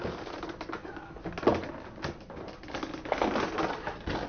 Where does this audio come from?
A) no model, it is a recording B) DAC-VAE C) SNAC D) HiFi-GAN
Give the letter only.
A